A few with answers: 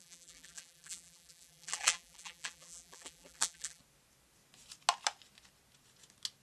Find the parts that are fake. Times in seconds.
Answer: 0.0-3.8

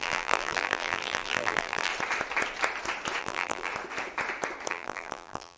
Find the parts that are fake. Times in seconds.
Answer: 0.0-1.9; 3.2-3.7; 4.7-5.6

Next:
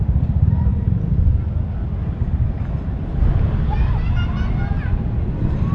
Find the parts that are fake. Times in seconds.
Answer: 0.7-4.1